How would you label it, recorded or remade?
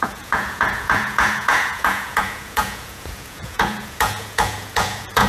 remade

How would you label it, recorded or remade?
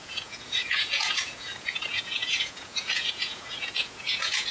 remade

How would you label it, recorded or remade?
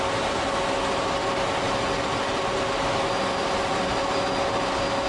recorded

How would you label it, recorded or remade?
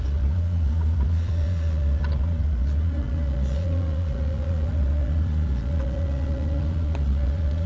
remade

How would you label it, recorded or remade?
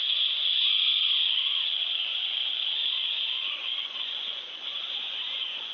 remade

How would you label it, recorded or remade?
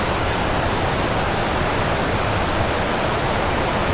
recorded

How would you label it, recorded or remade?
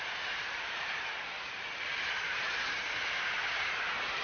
recorded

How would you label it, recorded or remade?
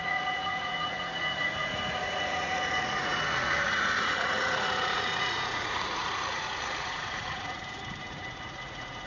remade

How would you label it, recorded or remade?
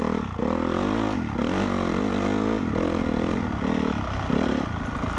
recorded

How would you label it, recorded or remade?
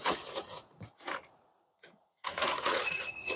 remade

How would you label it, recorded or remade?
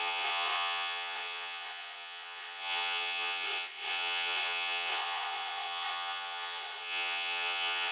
remade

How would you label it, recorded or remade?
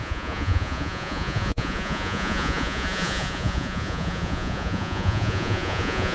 remade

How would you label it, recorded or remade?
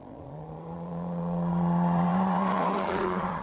remade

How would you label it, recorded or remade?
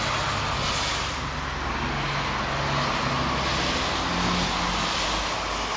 recorded